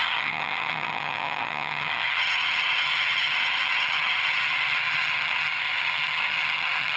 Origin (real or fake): fake